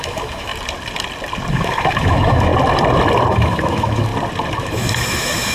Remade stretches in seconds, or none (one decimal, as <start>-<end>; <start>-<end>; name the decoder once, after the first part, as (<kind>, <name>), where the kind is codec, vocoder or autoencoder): 0.0-0.5 (autoencoder, DAC-VAE); 1.5-2.5; 3.3-4.1; 4.6-5.5